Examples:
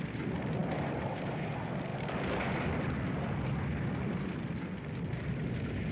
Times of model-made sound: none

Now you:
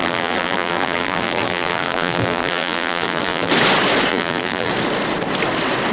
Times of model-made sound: 0.0-3.5 (vocoder, BigVGAN v2); 4.1-4.7

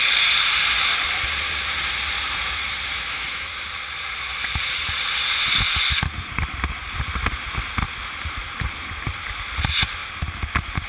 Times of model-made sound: 2.9-3.6 (autoencoder, DAC-VAE)

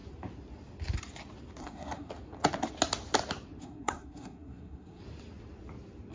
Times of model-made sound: 1.6-2.1 (codec, SNAC); 3.6-5.0

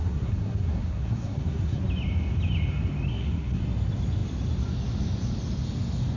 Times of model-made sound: 0.0-1.8 (codec, SNAC); 3.1-3.6

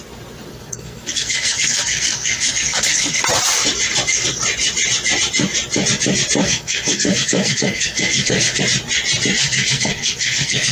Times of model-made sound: 0.5-3.2 (codec, SNAC); 6.4-8.6; 9.4-10.7

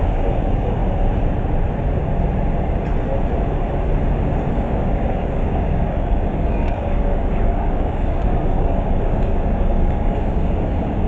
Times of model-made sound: 0.0-0.8 (codec, DAC); 4.5-11.1